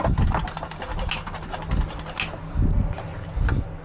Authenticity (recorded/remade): recorded